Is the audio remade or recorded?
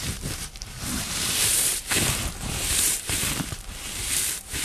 remade